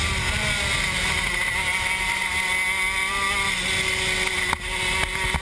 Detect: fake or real real